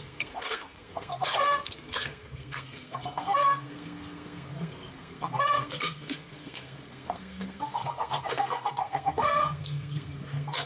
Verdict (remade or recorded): remade